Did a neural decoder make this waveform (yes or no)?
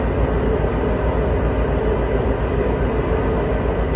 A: no